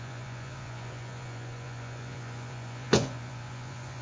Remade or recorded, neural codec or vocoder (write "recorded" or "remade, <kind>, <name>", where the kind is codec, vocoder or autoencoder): remade, vocoder, Vocos